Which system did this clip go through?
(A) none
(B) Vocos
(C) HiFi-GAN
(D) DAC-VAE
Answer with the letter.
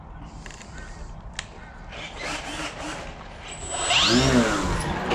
A